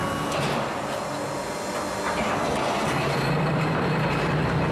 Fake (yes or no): no